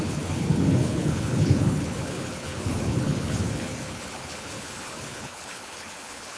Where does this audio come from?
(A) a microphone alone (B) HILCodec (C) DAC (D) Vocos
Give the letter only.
B